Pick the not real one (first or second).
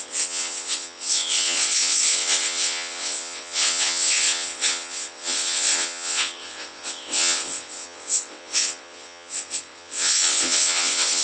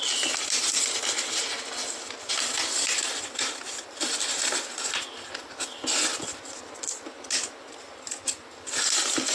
first